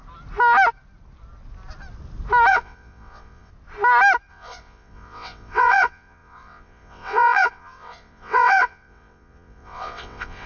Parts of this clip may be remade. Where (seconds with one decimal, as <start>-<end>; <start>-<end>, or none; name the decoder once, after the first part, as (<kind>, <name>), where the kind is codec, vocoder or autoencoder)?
2.5-3.5 (vocoder, WaveNeXt); 4.3-10.5